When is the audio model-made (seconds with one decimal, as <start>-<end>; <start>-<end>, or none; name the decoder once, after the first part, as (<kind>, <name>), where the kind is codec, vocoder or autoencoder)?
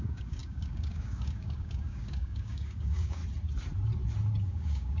0.0-3.2 (codec, DAC); 4.4-5.0